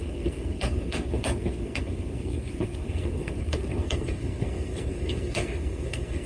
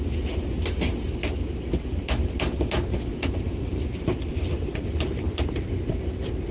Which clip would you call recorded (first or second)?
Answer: second